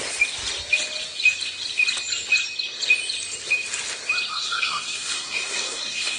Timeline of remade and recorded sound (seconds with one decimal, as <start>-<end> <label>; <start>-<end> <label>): 0.0-4.3 recorded; 4.3-6.2 remade